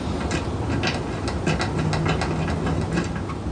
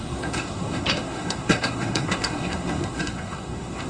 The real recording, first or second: first